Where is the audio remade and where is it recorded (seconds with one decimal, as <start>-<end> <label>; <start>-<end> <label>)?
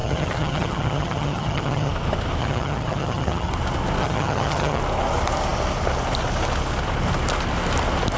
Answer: 0.0-1.9 remade; 1.9-2.4 recorded; 2.4-3.5 remade; 3.5-4.0 recorded; 4.0-4.8 remade; 4.8-8.2 recorded